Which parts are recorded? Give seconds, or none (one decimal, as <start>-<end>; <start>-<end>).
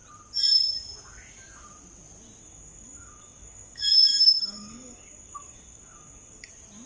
0.0-2.4; 6.5-6.9